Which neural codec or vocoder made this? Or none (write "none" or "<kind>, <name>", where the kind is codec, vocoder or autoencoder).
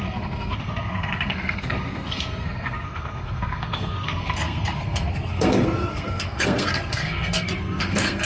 codec, SNAC